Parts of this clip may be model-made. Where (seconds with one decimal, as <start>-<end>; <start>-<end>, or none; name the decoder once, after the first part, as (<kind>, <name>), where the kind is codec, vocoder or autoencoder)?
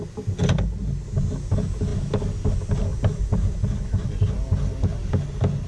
2.9-4.2 (vocoder, BigVGAN v2)